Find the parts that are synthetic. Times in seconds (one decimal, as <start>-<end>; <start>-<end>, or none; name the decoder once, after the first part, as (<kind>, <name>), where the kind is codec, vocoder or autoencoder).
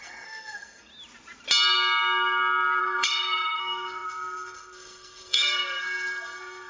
0.0-0.9 (codec, SNAC); 2.8-6.7